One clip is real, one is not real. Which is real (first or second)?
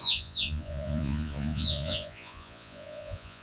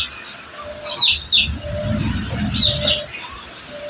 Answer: second